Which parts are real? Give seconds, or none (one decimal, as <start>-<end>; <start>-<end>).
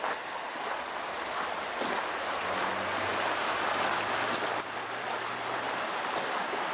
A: 0.0-6.7